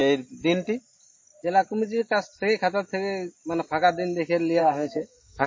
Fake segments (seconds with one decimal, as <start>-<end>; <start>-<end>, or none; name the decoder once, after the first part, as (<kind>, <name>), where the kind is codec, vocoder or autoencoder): 4.6-5.5 (codec, SNAC)